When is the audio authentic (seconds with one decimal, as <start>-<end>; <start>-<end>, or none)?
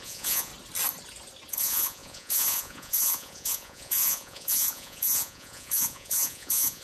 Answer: 0.5-1.5